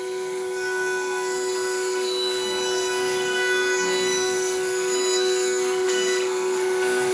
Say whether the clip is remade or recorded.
remade